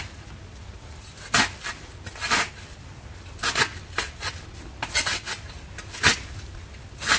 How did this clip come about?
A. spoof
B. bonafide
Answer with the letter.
B